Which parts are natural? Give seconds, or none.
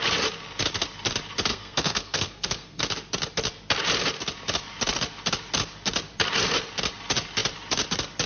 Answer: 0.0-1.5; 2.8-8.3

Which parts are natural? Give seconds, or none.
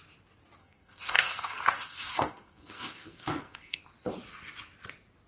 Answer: 0.0-0.6; 3.8-5.3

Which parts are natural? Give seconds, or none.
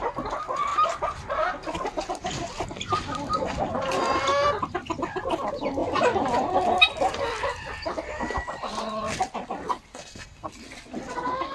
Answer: 0.0-9.9; 10.5-11.5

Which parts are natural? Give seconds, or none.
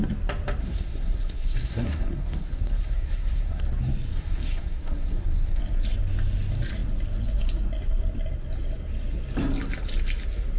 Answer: 0.0-0.6; 3.6-4.1; 5.6-10.6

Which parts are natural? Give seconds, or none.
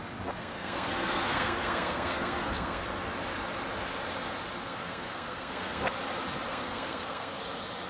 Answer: 0.0-0.4; 2.8-4.6; 5.8-6.5; 7.4-7.9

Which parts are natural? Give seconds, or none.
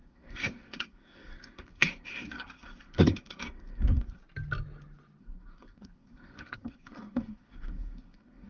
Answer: 4.2-5.2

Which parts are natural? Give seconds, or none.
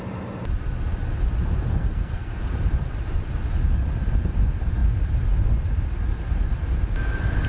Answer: 0.0-1.7; 2.4-7.5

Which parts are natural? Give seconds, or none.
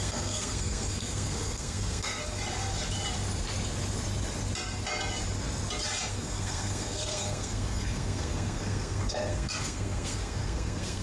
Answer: 2.2-6.1